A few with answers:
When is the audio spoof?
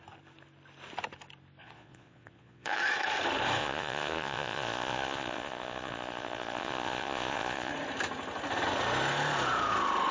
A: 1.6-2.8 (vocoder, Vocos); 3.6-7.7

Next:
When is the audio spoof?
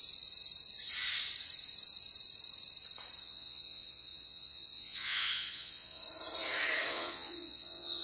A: 3.2-6.0 (vocoder, Vocos); 6.9-8.0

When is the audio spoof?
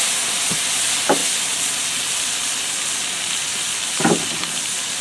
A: none